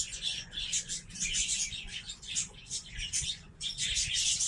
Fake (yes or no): yes